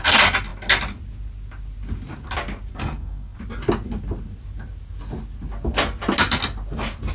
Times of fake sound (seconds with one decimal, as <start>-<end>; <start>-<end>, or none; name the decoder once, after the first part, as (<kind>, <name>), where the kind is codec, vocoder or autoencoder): 2.7-3.4 (codec, SNAC)